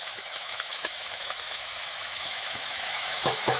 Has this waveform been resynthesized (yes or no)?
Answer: yes